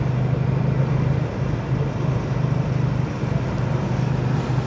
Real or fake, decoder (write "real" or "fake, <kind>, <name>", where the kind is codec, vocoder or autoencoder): real